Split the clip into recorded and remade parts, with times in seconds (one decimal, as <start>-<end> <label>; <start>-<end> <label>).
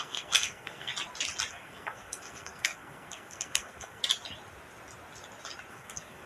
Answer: 0.0-0.9 remade; 0.9-1.5 recorded; 1.5-4.0 remade; 4.0-5.7 recorded; 5.7-6.3 remade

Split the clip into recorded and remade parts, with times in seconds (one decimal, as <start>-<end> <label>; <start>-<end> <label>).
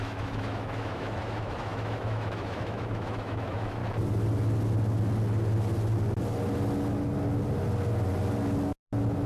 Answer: 0.0-3.8 remade; 3.8-9.3 recorded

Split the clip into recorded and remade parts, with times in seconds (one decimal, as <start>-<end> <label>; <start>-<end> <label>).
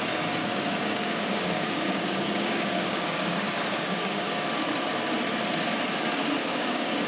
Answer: 0.0-0.4 recorded; 0.4-4.5 remade; 4.5-6.4 recorded; 6.4-7.1 remade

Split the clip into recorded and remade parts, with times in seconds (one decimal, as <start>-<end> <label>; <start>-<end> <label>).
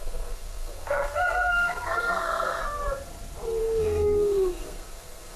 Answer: 0.0-2.6 remade; 2.6-3.6 recorded; 3.6-5.4 remade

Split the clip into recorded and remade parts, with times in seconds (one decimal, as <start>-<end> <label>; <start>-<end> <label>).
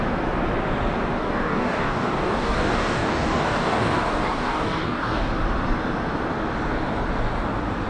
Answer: 0.0-1.2 recorded; 1.2-5.3 remade; 5.3-7.9 recorded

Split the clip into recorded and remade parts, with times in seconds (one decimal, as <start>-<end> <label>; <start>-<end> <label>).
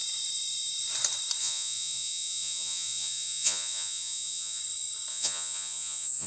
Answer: 0.0-1.4 recorded; 1.4-4.6 remade; 4.6-5.1 recorded; 5.1-6.3 remade